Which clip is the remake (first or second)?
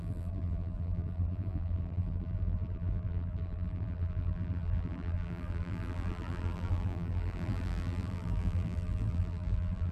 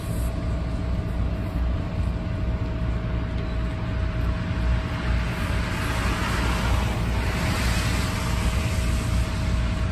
first